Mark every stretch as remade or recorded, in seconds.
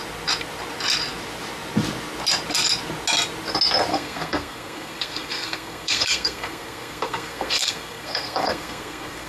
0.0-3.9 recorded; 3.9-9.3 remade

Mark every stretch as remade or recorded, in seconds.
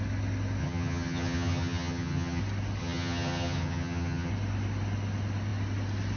0.0-0.6 recorded; 0.6-2.4 remade; 2.4-2.8 recorded; 2.8-4.3 remade; 4.3-6.2 recorded